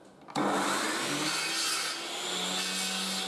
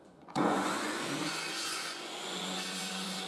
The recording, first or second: first